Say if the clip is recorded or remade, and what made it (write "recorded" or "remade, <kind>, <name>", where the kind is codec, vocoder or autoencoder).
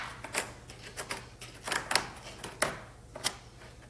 recorded